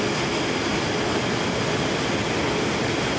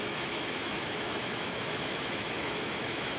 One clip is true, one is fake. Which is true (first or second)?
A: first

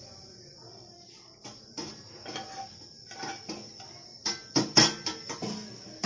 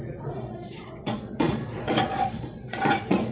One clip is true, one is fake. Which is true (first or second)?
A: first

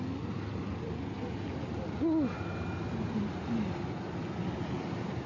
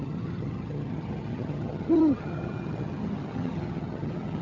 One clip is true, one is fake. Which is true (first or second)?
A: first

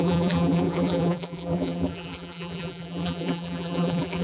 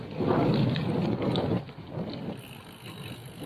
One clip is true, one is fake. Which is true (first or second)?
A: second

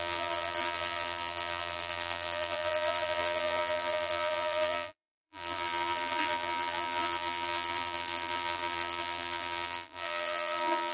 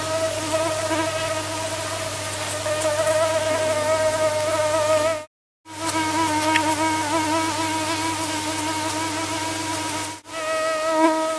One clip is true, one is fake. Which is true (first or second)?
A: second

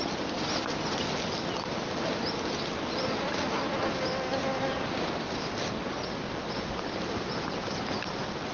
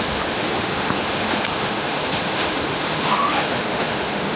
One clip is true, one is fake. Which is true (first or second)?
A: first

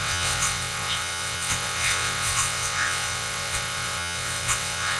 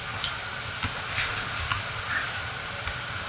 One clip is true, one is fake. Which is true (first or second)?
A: second